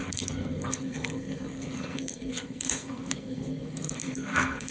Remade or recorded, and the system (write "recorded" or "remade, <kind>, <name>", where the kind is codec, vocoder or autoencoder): remade, codec, SNAC